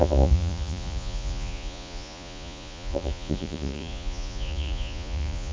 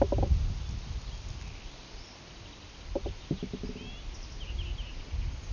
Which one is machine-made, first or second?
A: first